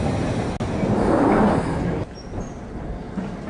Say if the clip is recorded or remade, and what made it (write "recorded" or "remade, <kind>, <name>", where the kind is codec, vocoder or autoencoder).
recorded